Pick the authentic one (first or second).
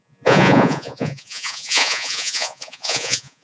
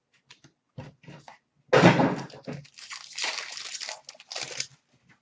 second